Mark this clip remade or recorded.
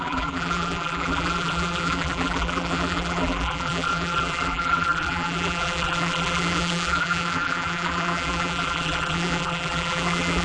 remade